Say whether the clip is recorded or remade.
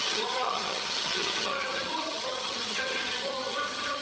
remade